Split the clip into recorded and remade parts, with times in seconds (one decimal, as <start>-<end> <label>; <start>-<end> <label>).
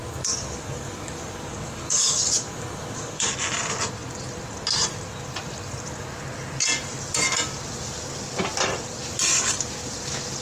0.0-3.3 remade; 3.3-10.4 recorded